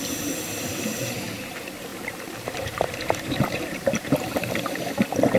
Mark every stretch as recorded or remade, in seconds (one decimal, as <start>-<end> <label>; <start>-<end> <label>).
0.0-1.9 recorded; 1.9-4.5 remade; 4.5-5.4 recorded